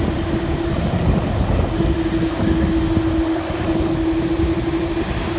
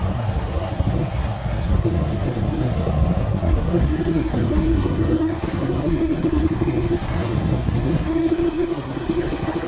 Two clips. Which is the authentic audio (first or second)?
first